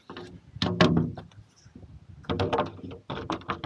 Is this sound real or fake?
real